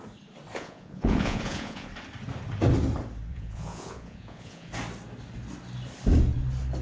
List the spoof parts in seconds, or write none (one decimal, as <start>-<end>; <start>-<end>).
0.5-1.9; 3.3-4.7